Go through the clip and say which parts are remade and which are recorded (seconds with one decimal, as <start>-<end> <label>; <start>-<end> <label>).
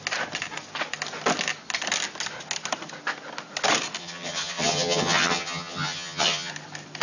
0.0-4.0 recorded; 4.0-6.5 remade; 6.5-7.0 recorded